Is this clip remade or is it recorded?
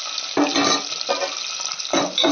recorded